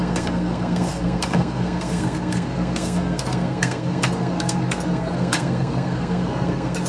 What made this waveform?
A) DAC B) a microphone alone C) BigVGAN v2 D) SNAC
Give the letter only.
D